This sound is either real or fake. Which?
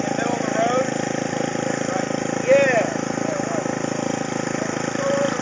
real